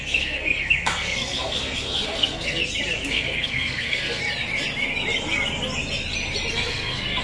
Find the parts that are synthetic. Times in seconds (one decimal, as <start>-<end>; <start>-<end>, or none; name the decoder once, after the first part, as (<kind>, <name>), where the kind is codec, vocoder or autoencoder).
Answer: 0.0-2.6 (codec, SNAC); 3.1-4.2; 6.5-7.2